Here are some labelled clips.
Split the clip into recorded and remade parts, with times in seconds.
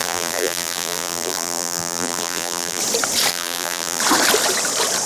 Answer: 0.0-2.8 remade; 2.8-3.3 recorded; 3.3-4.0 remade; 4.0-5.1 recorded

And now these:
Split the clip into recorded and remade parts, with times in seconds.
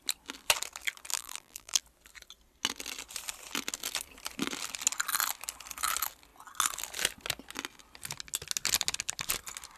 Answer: 0.0-1.1 recorded; 1.1-1.8 remade; 1.8-9.8 recorded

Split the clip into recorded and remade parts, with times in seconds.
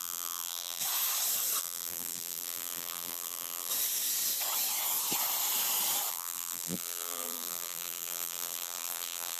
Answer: 0.0-0.8 remade; 0.8-1.6 recorded; 1.6-3.7 remade; 3.7-6.1 recorded; 6.1-9.4 remade